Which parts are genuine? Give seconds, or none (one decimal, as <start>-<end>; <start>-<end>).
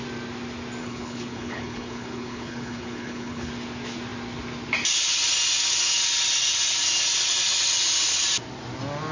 0.0-0.8; 3.5-9.1